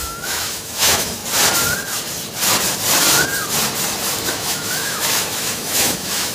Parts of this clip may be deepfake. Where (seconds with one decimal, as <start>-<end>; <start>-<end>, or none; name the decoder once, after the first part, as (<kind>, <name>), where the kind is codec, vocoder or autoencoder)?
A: 0.0-1.2 (autoencoder, DAC-VAE); 4.3-6.3